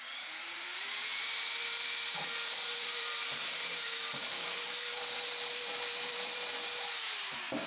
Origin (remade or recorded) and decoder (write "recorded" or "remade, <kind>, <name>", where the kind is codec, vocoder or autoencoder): remade, vocoder, BigVGAN v2